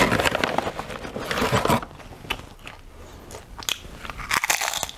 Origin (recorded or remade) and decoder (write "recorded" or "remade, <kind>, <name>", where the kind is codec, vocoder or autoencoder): recorded